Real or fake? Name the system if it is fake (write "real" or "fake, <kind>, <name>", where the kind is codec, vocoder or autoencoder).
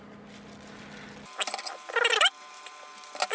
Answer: real